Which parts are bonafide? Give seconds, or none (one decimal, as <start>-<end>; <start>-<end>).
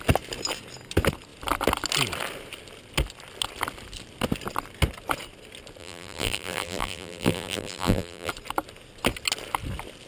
0.0-5.8; 8.3-10.1